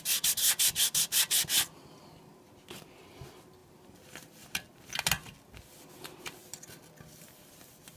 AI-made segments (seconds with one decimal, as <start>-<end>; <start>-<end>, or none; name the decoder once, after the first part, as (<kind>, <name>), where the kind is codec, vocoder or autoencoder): none